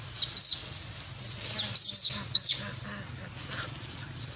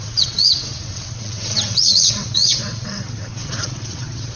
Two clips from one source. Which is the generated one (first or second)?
second